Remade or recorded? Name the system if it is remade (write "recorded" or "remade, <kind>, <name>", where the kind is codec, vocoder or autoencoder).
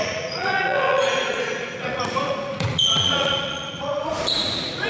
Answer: remade, vocoder, Vocos